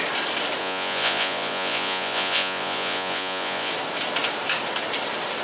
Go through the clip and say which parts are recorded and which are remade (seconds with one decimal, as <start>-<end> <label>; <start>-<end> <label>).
0.0-0.6 recorded; 0.6-3.7 remade; 3.7-5.4 recorded